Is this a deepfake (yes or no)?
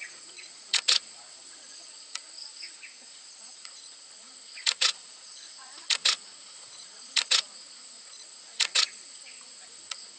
yes